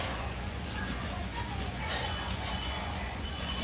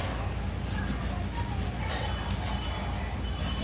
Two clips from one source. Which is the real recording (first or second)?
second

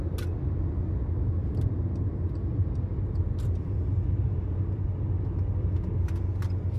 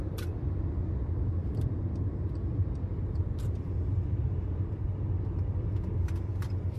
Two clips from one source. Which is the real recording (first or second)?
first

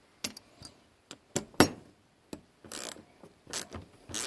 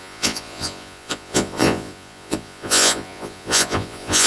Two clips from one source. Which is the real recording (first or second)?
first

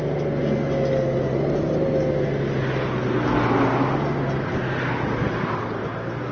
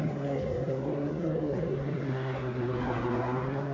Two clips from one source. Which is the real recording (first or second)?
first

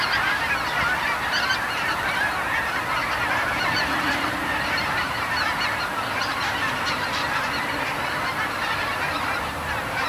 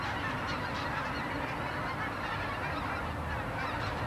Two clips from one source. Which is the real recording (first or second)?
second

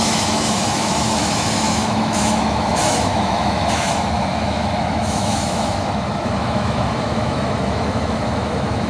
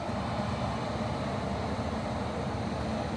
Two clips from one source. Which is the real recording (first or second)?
second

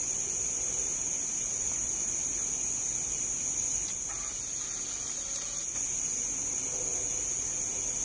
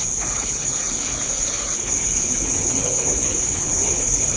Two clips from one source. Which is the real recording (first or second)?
first